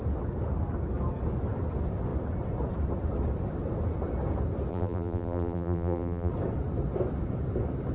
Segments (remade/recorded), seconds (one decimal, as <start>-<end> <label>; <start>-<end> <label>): 0.0-4.7 recorded; 4.7-6.3 remade; 6.3-7.9 recorded